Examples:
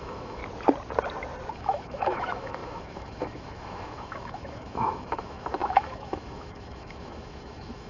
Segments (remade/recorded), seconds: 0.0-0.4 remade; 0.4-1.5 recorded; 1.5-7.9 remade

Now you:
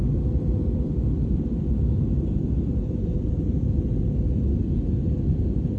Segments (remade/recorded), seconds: 0.0-0.6 recorded; 0.6-4.1 remade; 4.1-5.8 recorded

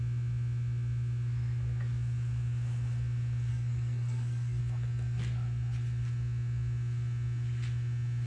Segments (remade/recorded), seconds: 0.0-3.5 recorded; 3.5-4.6 remade; 4.6-8.3 recorded

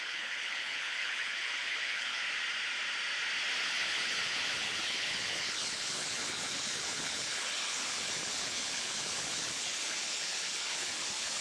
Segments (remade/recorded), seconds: 0.0-2.2 remade; 2.2-3.6 recorded; 3.6-11.4 remade

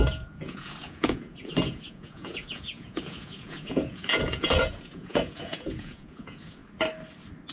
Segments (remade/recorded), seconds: 0.0-6.6 remade; 6.6-7.5 recorded